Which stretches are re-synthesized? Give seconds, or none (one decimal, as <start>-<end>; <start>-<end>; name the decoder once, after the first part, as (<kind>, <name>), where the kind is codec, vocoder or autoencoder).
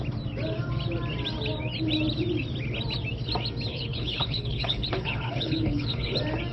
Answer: 3.7-6.1 (codec, HILCodec)